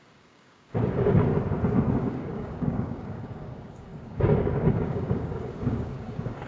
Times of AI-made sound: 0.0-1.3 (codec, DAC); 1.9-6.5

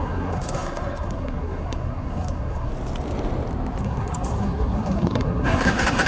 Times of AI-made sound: 0.0-2.7 (codec, SNAC); 3.8-6.1

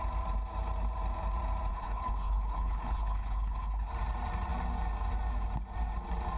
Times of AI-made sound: 1.7-3.9 (codec, HILCodec)

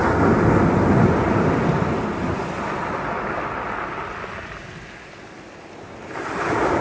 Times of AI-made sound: none

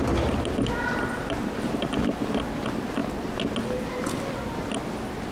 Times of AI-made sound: none

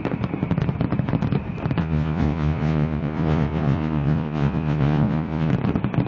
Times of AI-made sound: 1.8-5.5 (vocoder, Vocos)

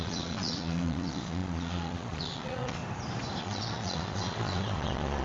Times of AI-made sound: 0.0-2.8 (vocoder, Vocos); 3.4-5.2